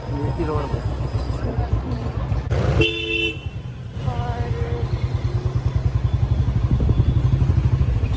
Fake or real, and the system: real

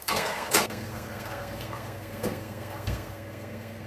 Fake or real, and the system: fake, codec, SNAC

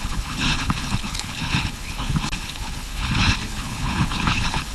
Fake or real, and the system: fake, codec, HILCodec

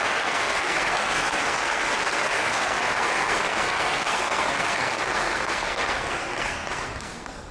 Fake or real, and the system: fake, codec, SNAC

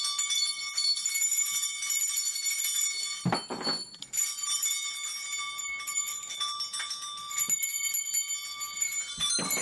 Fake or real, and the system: real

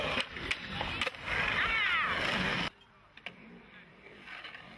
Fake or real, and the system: real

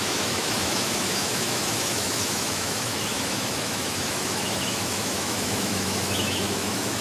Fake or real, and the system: fake, autoencoder, DAC-VAE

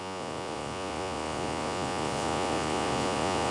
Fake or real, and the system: fake, vocoder, Vocos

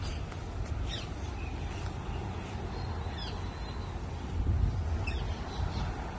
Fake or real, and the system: real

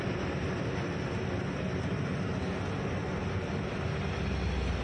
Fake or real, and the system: real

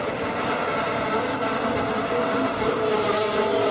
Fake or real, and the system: real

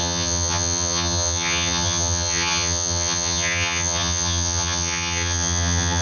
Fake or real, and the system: fake, vocoder, HiFi-GAN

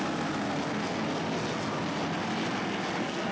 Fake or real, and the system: real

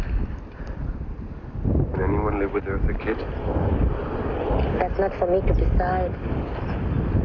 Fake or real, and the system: real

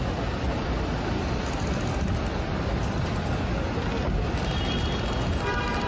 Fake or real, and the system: real